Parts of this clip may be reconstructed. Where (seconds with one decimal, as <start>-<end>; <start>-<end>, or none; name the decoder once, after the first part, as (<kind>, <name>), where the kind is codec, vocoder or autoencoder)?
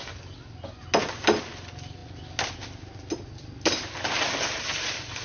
none